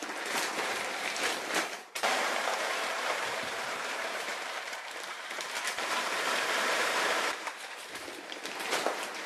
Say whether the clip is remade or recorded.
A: remade